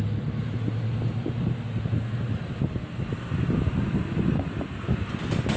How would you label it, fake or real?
real